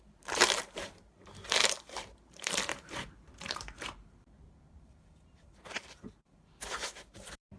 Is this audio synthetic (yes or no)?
yes